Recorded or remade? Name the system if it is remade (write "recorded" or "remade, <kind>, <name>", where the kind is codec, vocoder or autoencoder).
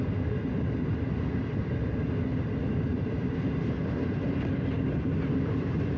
recorded